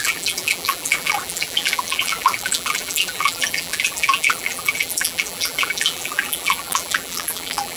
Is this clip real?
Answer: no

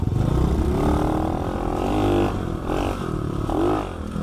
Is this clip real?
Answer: yes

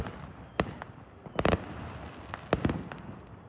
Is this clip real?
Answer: yes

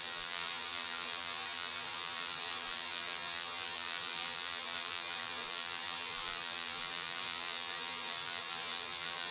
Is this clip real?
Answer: no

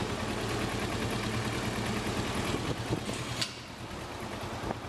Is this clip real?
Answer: yes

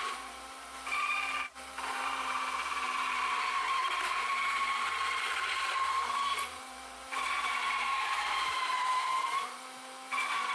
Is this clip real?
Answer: no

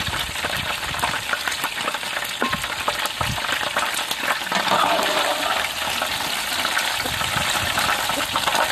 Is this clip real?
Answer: yes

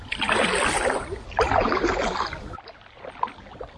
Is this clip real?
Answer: yes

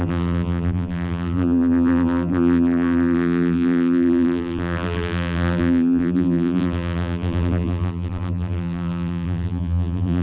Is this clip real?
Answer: no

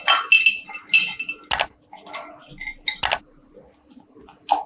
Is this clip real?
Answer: yes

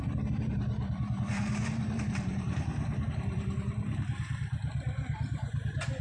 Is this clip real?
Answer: no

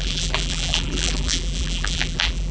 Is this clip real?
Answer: no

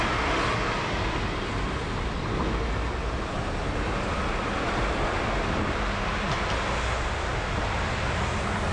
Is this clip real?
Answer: yes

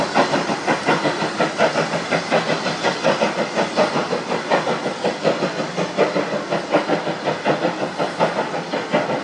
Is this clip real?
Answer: yes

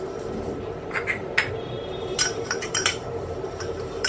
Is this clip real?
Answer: no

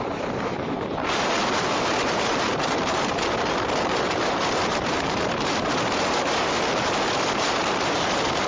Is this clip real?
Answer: no